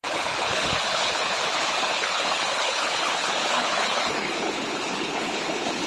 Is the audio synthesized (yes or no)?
yes